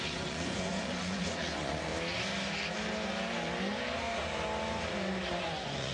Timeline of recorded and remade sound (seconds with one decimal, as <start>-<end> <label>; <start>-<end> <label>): 0.0-1.9 remade; 1.9-5.4 recorded; 5.4-5.9 remade